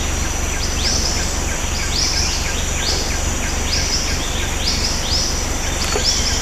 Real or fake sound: real